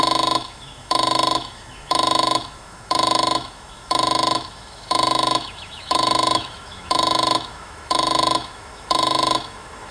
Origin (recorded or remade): remade